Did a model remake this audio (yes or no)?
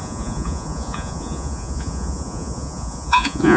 yes